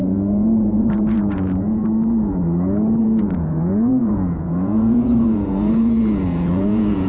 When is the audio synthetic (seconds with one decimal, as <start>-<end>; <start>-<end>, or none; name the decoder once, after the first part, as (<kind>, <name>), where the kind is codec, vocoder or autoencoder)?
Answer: 0.0-1.8 (vocoder, Vocos); 3.0-7.1